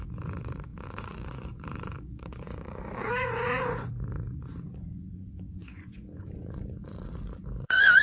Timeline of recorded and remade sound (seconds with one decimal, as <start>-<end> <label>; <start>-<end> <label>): 0.0-8.0 remade